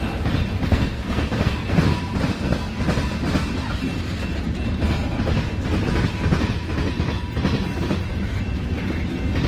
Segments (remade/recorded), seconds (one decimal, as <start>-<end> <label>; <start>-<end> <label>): 0.0-0.7 recorded; 0.7-1.8 remade; 1.8-2.3 recorded; 2.3-2.8 remade; 2.8-9.5 recorded